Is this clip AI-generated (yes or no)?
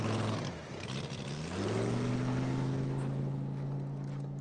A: no